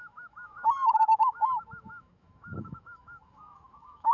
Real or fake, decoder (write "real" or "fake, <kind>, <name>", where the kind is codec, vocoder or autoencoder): fake, autoencoder, DAC-VAE